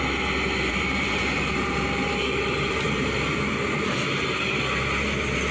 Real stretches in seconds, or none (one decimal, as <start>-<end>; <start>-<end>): 0.0-0.7; 4.0-5.5